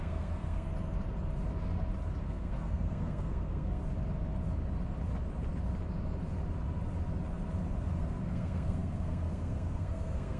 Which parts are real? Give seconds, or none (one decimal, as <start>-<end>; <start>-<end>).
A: 0.7-2.2; 3.8-7.8